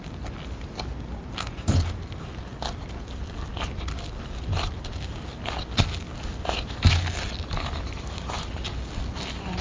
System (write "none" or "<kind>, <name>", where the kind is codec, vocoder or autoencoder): none